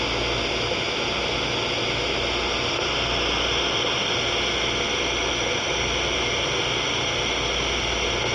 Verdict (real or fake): real